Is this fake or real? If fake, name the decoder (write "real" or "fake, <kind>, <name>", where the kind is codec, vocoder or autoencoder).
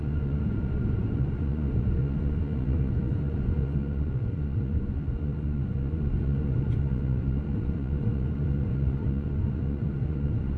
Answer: fake, vocoder, Vocos